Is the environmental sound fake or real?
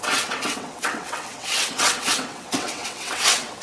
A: fake